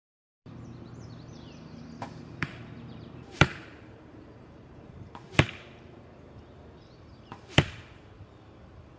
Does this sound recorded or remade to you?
remade